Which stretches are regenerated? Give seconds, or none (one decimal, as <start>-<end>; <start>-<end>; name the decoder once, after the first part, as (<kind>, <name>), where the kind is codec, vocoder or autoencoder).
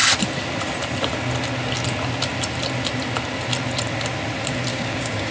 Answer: 4.7-5.3 (codec, DAC)